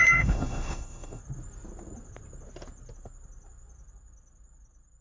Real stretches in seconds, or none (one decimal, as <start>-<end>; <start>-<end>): 1.2-5.0